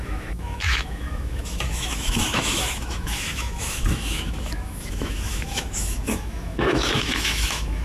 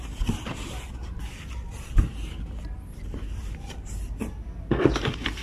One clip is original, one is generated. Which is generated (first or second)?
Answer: first